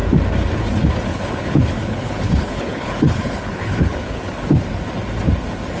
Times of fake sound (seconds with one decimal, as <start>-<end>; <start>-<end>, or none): 1.1-4.6